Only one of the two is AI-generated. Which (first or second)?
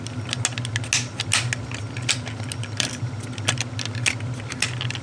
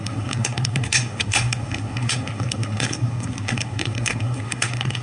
second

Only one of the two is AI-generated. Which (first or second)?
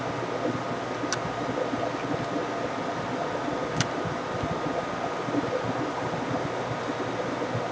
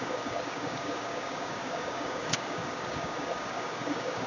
second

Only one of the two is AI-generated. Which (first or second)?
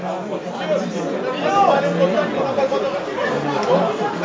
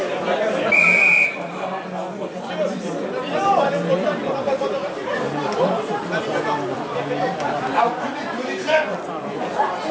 second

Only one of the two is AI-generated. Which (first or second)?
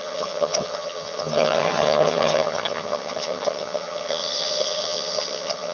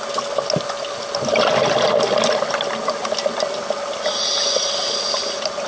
first